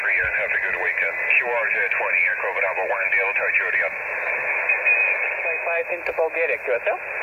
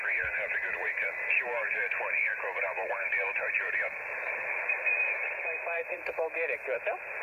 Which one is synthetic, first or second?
second